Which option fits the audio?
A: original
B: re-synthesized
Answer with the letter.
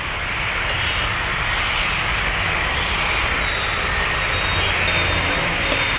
A